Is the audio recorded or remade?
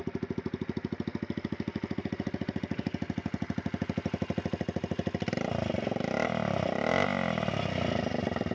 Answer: recorded